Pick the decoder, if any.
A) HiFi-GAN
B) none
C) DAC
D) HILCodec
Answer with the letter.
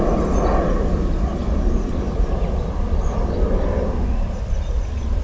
B